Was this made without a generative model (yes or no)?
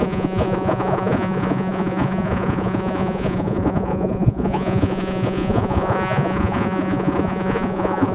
no